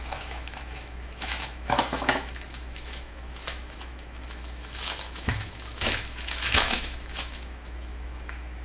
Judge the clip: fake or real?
fake